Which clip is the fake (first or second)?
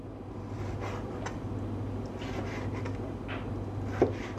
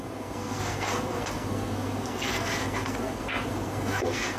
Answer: second